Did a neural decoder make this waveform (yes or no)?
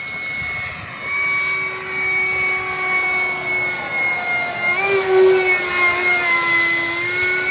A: no